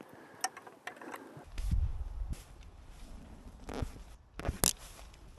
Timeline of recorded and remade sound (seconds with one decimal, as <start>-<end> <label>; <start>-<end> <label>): 0.0-5.4 recorded